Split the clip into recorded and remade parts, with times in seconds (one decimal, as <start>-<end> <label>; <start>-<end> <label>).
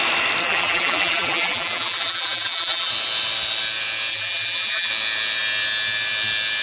0.0-0.4 recorded; 0.4-2.9 remade; 2.9-4.1 recorded; 4.1-4.9 remade; 4.9-6.6 recorded